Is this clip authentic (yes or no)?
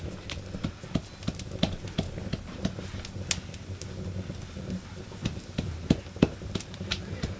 yes